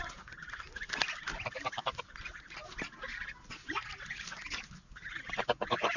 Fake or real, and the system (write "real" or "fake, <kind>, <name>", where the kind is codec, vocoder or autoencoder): real